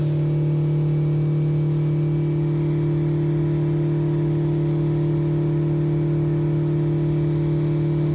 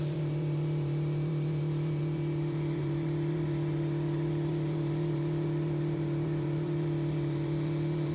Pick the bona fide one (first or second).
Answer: first